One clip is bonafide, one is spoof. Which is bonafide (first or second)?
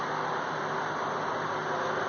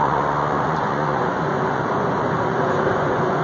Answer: first